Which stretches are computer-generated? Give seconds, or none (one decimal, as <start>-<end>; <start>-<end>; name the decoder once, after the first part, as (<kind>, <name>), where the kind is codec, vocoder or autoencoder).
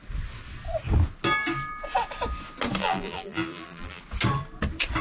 2.8-4.0 (vocoder, BigVGAN v2)